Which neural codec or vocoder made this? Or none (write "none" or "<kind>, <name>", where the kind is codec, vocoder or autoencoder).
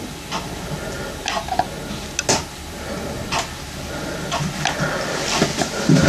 none